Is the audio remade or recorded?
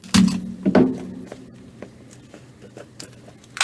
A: recorded